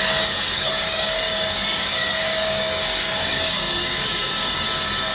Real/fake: fake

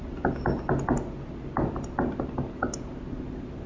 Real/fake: real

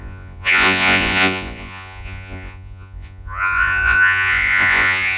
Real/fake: fake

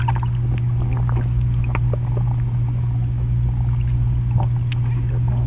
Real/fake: real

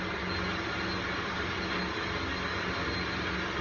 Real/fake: real